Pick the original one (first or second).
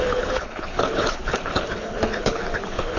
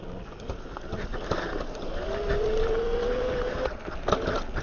second